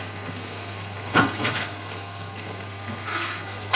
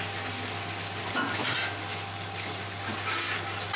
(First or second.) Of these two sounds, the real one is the second